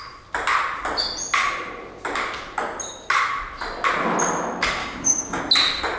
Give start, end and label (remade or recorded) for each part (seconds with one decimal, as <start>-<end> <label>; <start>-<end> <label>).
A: 0.0-4.8 recorded; 4.8-5.4 remade; 5.4-6.0 recorded